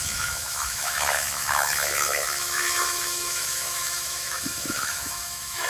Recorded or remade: remade